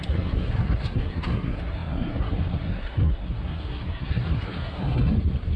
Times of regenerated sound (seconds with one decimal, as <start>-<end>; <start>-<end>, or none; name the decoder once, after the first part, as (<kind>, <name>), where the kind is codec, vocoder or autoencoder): 0.0-5.6 (codec, SNAC)